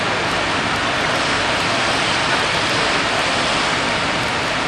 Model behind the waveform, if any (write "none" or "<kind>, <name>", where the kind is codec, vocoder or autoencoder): vocoder, BigVGAN v2